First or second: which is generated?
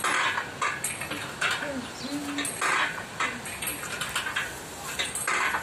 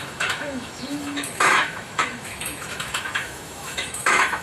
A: second